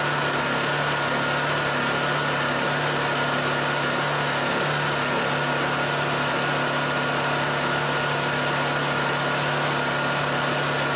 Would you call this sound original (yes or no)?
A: yes